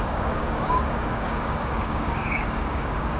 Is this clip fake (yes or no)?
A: yes